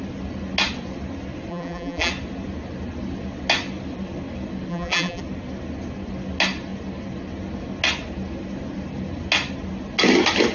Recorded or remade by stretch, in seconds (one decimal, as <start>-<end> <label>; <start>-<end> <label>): 0.0-1.5 recorded; 1.5-2.1 remade; 2.1-4.7 recorded; 4.7-5.2 remade; 5.2-10.5 recorded